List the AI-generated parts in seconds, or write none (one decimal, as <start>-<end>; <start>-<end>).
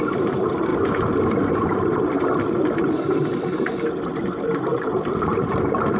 0.0-0.7; 3.6-6.0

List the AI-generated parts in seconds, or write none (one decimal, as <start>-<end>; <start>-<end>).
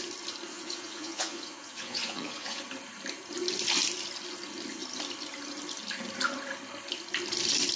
0.5-2.6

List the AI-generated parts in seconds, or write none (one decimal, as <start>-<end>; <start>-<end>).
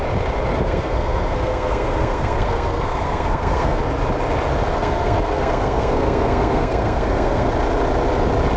0.5-3.8; 4.7-7.5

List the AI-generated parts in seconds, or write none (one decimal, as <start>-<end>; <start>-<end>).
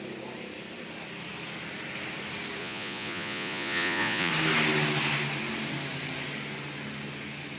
2.6-4.3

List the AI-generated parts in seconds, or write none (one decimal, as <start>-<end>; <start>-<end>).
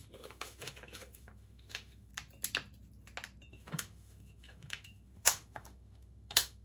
0.0-2.1; 3.5-6.6